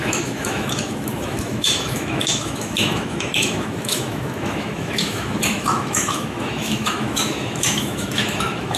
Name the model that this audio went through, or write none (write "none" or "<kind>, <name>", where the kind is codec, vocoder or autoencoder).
autoencoder, DAC-VAE